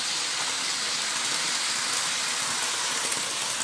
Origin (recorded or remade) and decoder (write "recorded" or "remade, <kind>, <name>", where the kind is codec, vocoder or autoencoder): recorded